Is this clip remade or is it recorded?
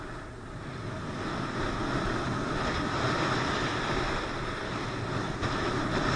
recorded